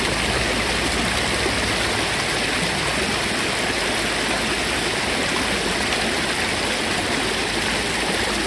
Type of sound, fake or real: real